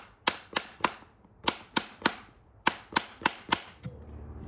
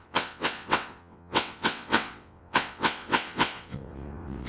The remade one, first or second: second